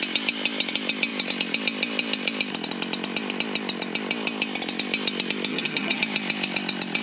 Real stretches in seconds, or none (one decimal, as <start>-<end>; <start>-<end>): 0.0-5.5; 6.0-7.0